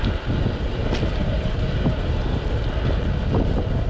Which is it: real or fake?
real